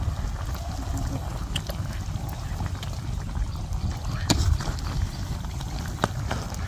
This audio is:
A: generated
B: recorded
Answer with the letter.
B